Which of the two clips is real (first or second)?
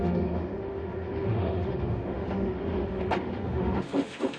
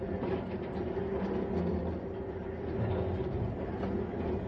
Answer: second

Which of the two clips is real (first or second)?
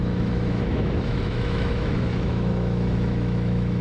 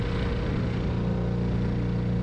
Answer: second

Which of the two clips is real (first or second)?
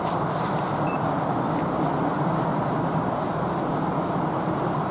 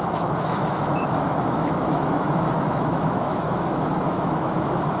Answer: first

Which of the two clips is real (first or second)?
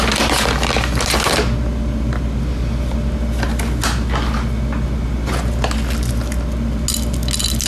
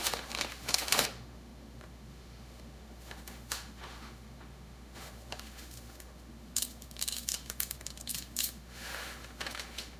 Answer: first